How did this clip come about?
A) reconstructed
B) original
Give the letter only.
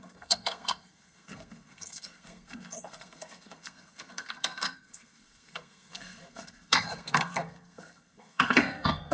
A